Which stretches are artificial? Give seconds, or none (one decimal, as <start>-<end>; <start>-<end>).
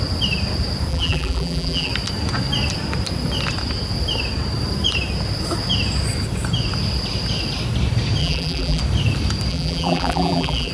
0.9-1.9; 8.2-8.8; 9.5-10.7